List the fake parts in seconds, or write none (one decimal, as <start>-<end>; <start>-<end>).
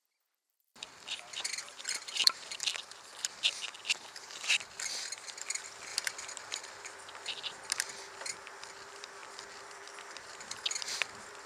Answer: 0.7-2.6